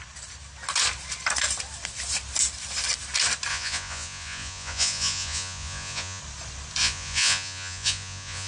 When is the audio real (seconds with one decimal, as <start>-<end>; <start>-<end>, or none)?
0.0-3.5; 6.2-6.8